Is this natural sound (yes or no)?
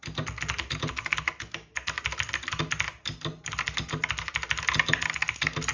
yes